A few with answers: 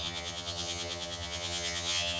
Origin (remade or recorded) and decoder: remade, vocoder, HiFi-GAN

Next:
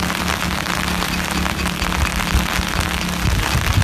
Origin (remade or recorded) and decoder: recorded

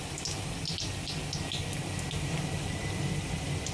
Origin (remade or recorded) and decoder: recorded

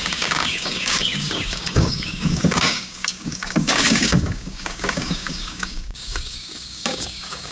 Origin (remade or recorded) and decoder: remade, codec, DAC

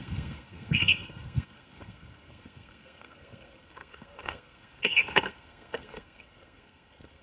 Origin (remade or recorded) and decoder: remade, codec, SNAC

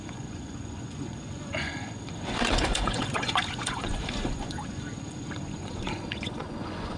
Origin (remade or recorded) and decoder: remade, vocoder, Vocos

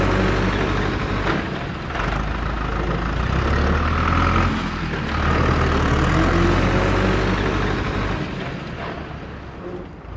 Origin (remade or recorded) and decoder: recorded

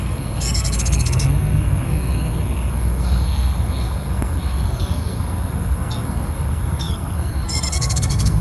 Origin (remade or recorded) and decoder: remade, codec, SNAC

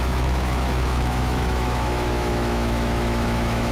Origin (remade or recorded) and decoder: remade, autoencoder, DAC-VAE